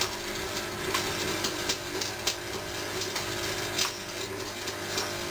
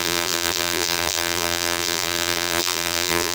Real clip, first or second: first